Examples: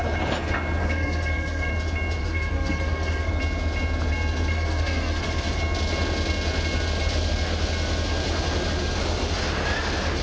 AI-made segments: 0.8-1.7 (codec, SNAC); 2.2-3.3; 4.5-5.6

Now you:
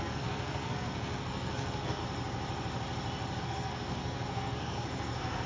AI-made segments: 0.0-2.0 (codec, SNAC); 3.4-5.5

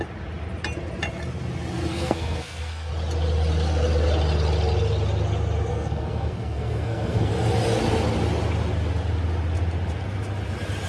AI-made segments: 1.9-2.9 (codec, SNAC); 5.7-7.3

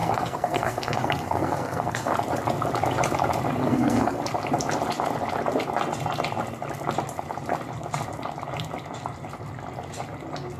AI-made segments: 0.0-2.1 (codec, SNAC); 3.6-4.2

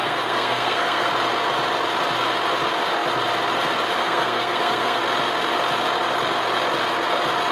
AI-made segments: 0.0-1.1 (codec, SNAC); 4.0-5.0

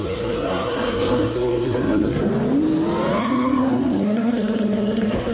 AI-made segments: 0.0-2.3 (codec, SNAC); 3.2-5.3